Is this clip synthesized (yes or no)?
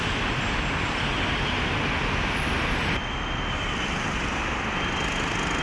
no